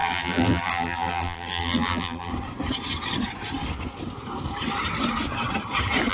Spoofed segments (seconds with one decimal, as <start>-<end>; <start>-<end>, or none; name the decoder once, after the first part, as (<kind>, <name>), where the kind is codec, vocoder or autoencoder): 0.0-2.3 (vocoder, BigVGAN v2)